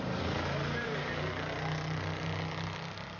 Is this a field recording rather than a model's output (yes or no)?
yes